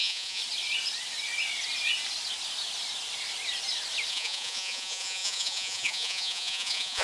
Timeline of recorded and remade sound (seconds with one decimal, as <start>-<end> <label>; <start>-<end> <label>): 0.0-0.4 remade; 0.4-4.1 recorded; 4.1-7.0 remade